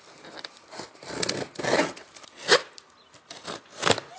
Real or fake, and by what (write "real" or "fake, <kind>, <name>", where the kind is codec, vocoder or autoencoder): real